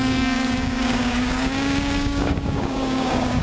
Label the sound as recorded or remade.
remade